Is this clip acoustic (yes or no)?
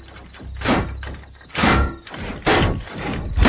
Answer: yes